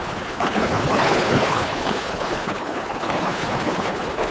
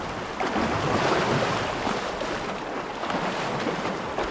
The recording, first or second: second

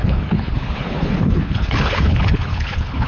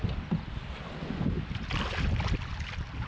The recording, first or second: second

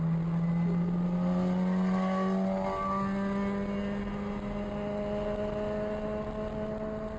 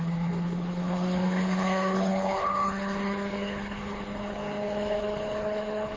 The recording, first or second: first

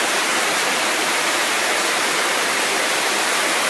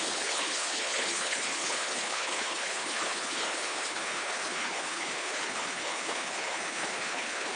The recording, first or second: first